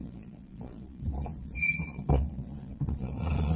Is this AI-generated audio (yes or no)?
yes